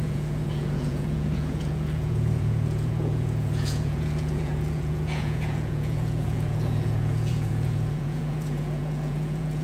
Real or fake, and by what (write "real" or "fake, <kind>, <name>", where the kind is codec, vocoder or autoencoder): fake, vocoder, Vocos